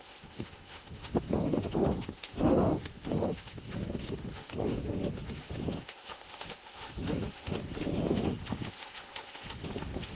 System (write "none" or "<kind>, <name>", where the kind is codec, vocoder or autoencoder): autoencoder, DAC-VAE